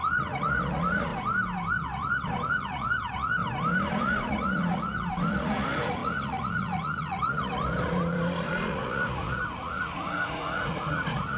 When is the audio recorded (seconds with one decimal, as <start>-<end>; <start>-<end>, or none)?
1.1-1.7; 3.4-3.9